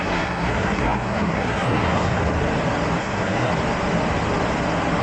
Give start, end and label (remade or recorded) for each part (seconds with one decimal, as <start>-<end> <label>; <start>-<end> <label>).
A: 0.0-2.2 remade; 2.2-3.0 recorded; 3.0-3.5 remade; 3.5-5.0 recorded